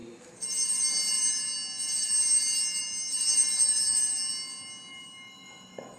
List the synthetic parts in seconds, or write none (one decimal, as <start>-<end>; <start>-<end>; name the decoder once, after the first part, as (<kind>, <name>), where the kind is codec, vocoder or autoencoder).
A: 4.9-6.0 (autoencoder, DAC-VAE)